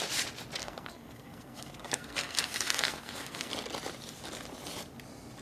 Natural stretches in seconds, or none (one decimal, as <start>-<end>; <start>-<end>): 0.0-0.6; 3.5-5.4